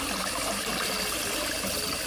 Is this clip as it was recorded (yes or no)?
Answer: yes